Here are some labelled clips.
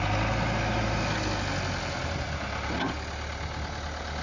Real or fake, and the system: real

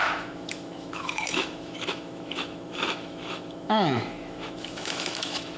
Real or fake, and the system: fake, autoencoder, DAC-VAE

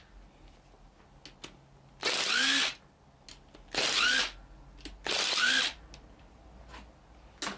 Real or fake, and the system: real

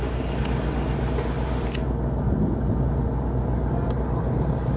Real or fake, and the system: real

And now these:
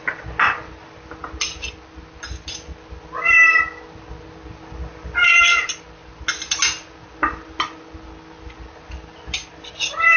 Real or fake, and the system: real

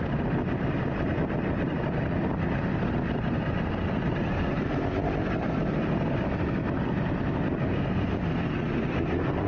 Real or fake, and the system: fake, vocoder, BigVGAN v2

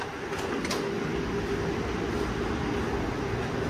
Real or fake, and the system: real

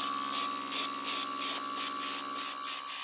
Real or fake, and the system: real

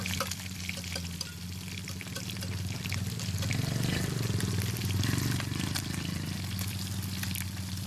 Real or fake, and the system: real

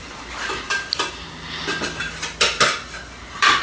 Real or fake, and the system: real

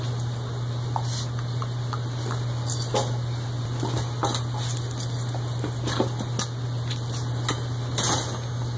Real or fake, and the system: real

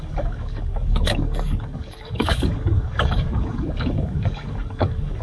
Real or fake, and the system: fake, codec, DAC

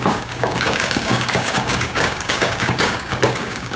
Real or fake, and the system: fake, codec, DAC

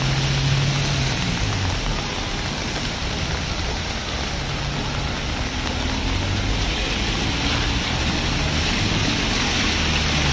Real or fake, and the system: real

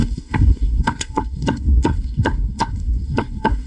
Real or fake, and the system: fake, codec, SNAC